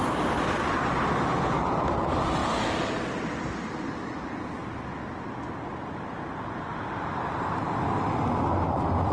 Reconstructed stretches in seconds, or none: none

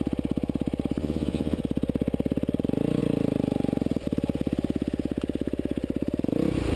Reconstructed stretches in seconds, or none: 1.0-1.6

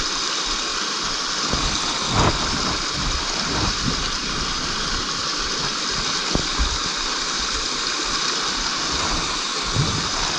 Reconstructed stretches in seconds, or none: 0.7-1.2; 1.6-5.9; 7.1-8.2

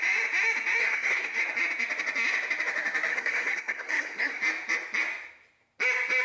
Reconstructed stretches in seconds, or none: 0.8-1.4; 3.1-4.4

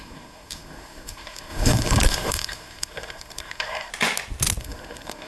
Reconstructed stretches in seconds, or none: 0.0-3.9; 4.6-5.3